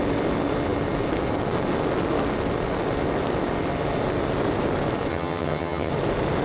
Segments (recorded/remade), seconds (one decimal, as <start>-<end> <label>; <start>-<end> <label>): 0.0-5.1 recorded; 5.1-5.9 remade; 5.9-6.4 recorded